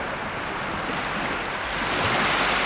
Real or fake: real